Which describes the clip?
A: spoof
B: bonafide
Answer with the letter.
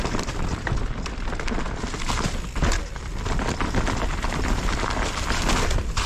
A